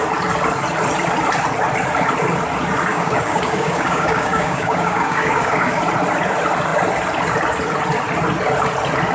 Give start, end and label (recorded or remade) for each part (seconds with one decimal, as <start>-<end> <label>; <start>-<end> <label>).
0.0-2.9 recorded; 2.9-5.8 remade; 5.8-9.1 recorded